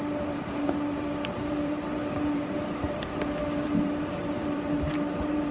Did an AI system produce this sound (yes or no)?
yes